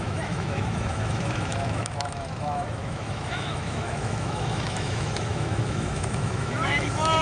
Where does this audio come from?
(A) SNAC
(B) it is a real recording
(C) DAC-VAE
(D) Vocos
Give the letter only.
C